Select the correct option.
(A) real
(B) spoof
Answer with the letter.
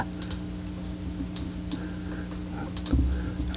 A